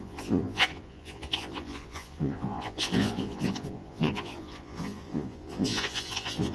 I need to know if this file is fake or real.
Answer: fake